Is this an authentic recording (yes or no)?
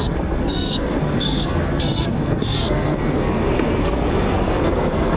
no